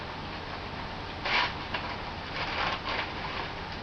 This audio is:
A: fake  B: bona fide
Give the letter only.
B